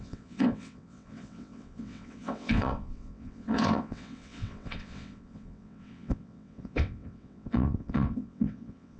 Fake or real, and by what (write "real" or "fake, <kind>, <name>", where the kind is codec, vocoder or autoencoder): fake, vocoder, WaveNeXt